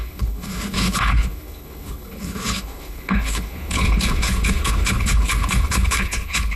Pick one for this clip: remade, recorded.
remade